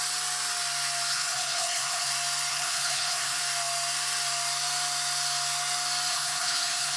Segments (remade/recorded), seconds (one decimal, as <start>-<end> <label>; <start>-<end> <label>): 0.0-1.1 recorded; 1.1-2.1 remade; 2.1-2.5 recorded; 2.5-3.4 remade; 3.4-6.1 recorded; 6.1-7.0 remade